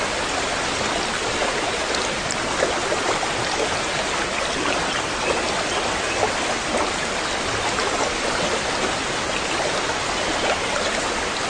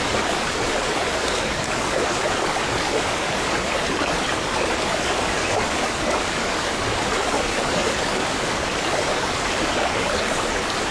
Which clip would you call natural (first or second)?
first